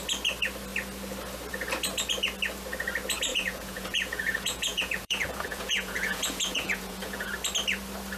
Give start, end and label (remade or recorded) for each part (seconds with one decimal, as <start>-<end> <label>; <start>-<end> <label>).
0.0-3.3 recorded; 3.3-7.3 remade; 7.3-8.2 recorded